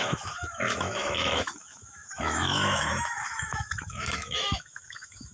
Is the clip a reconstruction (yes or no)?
yes